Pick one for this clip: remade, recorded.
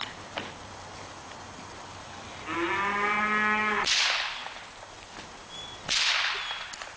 recorded